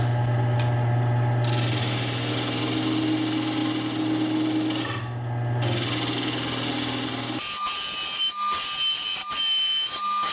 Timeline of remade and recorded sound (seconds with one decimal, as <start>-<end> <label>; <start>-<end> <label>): 0.0-10.3 recorded